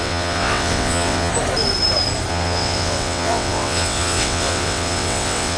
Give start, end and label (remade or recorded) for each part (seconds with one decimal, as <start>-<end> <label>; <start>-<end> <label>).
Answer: 0.0-1.3 remade; 1.3-2.3 recorded; 2.3-5.6 remade